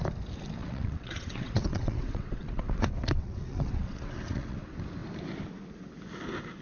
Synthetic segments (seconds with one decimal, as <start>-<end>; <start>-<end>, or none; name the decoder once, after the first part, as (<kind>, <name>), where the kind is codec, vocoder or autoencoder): 0.6-4.6 (vocoder, WaveNeXt)